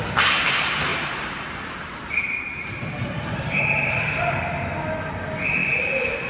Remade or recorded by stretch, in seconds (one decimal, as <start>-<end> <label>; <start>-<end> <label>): 0.0-0.9 recorded; 0.9-4.7 remade; 4.7-5.6 recorded; 5.6-6.3 remade